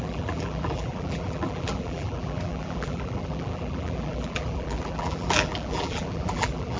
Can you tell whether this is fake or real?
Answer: fake